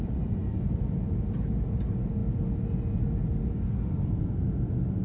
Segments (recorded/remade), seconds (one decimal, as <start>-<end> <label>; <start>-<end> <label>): 0.0-5.0 recorded